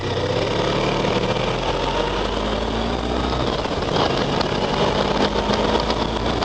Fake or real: real